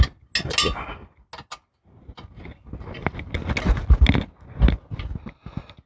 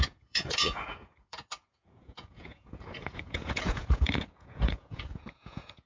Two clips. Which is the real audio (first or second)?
first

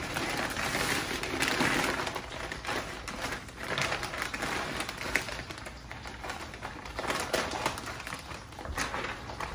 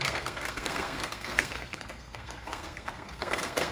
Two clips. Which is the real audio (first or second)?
first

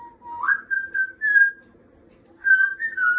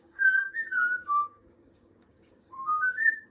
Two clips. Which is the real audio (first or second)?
first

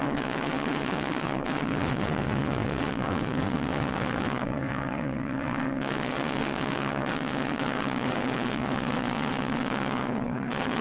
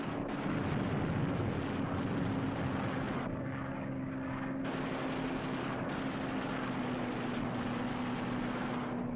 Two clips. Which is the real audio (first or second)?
second